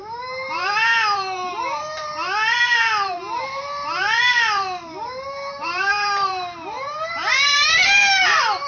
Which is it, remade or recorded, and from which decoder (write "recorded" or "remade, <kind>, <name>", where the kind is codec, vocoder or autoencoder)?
remade, vocoder, BigVGAN v2